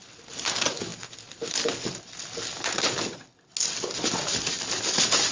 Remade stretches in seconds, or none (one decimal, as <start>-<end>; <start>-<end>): none